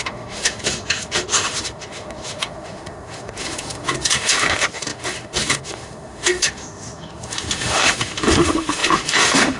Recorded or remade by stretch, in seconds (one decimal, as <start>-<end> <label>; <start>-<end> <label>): 0.0-9.6 remade